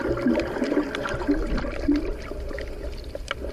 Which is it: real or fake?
real